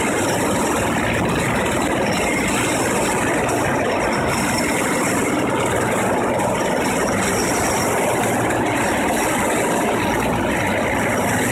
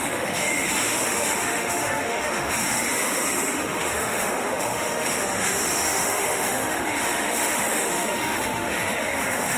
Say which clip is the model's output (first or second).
second